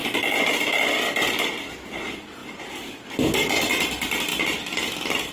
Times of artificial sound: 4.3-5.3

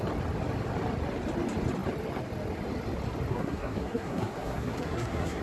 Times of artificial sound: 3.3-5.4

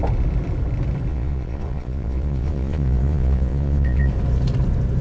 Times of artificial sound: 1.1-4.1

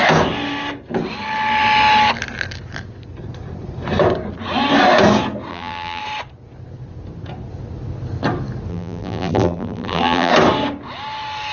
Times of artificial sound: 5.5-6.0; 8.7-10.3

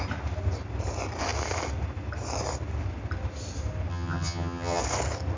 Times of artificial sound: 3.9-4.8

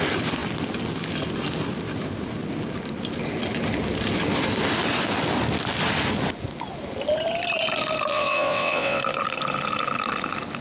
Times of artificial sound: 8.1-9.0